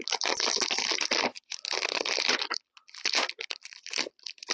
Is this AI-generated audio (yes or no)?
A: no